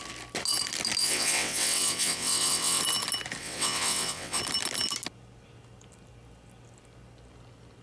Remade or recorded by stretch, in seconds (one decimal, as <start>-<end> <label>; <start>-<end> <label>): 0.0-1.0 recorded; 1.0-2.8 remade; 2.8-3.4 recorded; 3.4-4.4 remade; 4.4-7.8 recorded